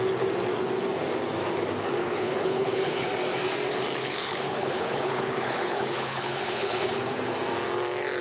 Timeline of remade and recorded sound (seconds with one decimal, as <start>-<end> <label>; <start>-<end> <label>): 0.0-2.0 recorded; 2.0-3.1 remade; 3.1-4.0 recorded; 4.0-7.0 remade; 7.0-8.2 recorded